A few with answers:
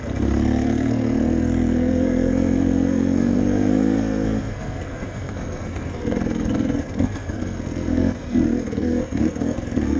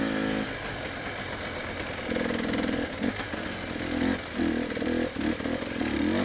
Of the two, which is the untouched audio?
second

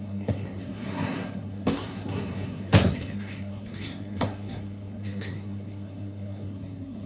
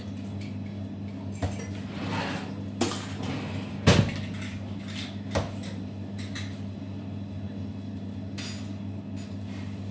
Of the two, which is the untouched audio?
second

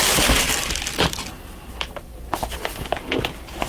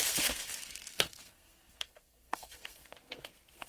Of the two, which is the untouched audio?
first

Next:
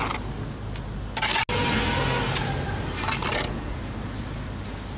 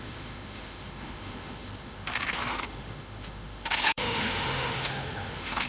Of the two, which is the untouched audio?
first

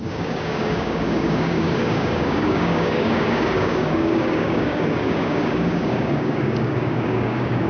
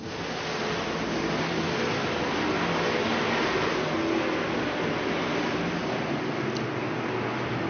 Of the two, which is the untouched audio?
second